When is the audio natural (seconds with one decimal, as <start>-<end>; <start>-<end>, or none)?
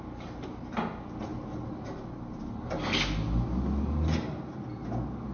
0.0-5.3